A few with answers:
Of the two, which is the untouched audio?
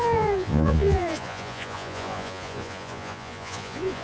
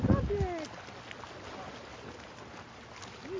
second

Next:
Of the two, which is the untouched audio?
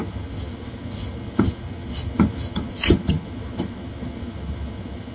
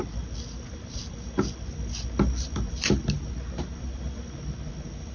second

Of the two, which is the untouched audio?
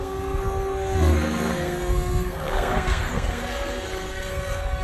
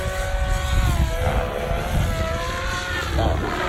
second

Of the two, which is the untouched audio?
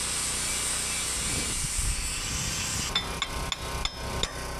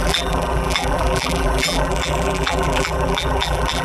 first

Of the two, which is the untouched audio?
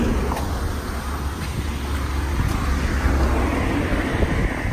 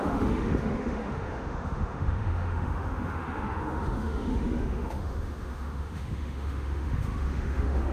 first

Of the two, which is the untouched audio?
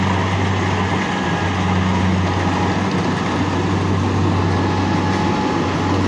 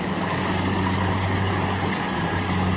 first